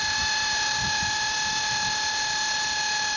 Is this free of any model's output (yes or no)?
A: yes